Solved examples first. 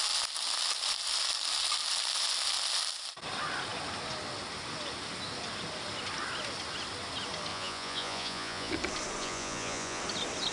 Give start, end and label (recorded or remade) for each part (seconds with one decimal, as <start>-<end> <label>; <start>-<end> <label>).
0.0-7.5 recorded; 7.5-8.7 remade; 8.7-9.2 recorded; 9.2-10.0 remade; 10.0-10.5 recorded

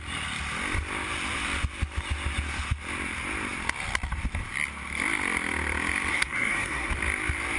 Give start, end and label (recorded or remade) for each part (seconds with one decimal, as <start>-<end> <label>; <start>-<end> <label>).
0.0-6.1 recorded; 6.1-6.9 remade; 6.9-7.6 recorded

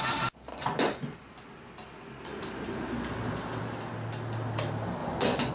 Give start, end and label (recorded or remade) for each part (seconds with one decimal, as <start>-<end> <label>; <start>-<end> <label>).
0.0-0.5 recorded; 0.5-1.2 remade; 1.2-5.0 recorded; 5.0-5.5 remade